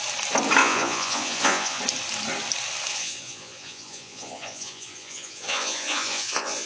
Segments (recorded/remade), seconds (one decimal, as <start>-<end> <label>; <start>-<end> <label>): 0.0-0.6 recorded; 0.6-1.8 remade; 1.8-2.9 recorded; 2.9-6.7 remade